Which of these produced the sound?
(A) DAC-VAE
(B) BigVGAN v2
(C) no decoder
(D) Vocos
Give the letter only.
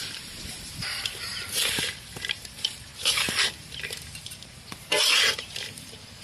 B